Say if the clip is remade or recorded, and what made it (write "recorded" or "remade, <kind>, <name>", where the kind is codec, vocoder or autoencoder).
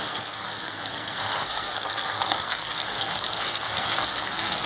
remade, codec, SNAC